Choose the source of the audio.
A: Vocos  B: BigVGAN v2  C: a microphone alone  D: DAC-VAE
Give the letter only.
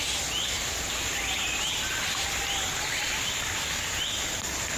C